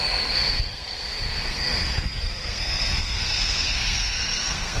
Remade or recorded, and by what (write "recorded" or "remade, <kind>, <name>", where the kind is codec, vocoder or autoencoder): remade, codec, SNAC